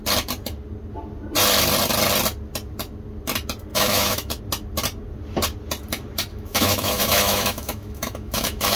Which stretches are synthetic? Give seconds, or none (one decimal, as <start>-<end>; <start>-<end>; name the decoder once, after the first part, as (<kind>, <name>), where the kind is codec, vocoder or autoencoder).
3.7-4.4 (autoencoder, DAC-VAE); 6.3-8.8